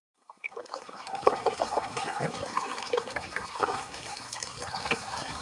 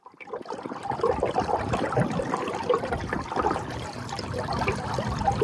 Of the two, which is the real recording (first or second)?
second